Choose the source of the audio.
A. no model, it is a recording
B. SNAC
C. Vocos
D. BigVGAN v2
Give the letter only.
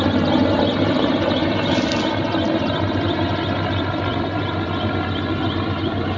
A